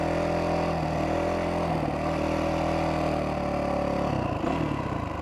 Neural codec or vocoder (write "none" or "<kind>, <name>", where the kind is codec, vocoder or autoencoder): none